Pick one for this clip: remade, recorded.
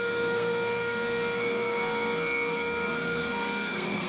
remade